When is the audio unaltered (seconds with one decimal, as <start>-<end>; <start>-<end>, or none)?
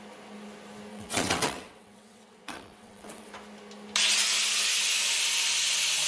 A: 0.0-0.9; 3.3-6.1